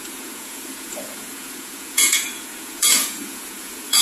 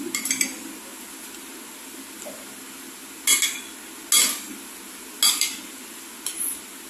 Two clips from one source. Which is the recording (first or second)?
second